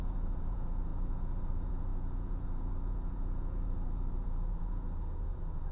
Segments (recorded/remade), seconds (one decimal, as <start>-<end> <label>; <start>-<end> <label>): 0.0-5.7 remade